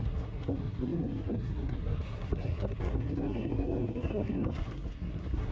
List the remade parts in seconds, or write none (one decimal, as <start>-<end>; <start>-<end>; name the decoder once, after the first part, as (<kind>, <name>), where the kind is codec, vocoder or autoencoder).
0.0-5.5 (codec, SNAC)